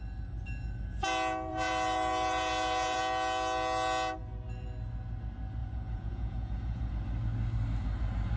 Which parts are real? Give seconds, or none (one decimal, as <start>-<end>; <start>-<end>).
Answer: 0.0-1.5; 3.0-5.6; 6.9-8.4

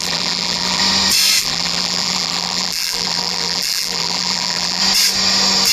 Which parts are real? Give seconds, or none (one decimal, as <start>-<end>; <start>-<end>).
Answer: 0.8-1.4; 4.8-5.7

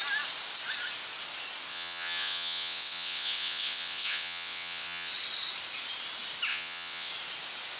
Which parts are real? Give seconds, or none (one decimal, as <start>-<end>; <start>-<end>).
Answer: 0.0-1.7; 5.1-6.5; 7.1-7.8

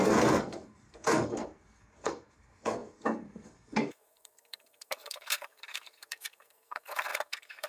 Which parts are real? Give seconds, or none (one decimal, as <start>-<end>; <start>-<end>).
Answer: none

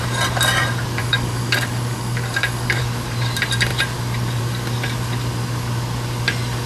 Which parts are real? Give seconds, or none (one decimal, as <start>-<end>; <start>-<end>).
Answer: 0.0-1.0; 2.8-6.7

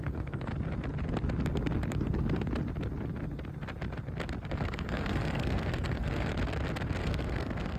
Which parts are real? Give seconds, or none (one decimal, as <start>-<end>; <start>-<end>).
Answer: 0.5-4.5; 6.3-7.0

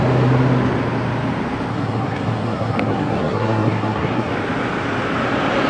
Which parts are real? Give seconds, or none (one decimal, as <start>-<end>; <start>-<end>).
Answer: 0.0-1.7; 4.3-5.7

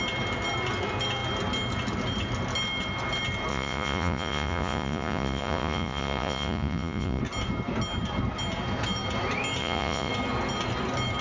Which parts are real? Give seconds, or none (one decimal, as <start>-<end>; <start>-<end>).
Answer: 0.0-3.5; 7.2-9.6; 10.1-11.2